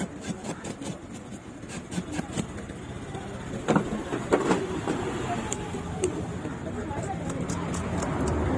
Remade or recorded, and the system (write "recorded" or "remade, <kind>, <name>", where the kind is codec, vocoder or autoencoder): recorded